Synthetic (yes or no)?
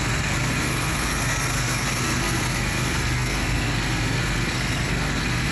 yes